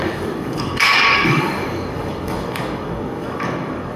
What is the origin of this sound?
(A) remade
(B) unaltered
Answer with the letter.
A